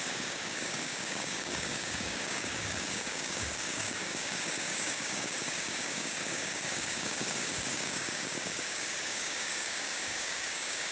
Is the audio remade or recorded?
remade